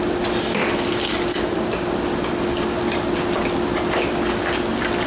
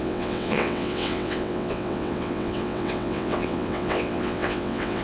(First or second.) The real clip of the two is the first